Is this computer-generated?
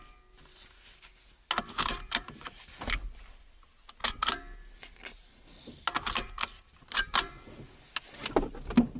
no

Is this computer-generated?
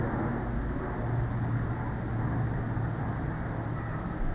no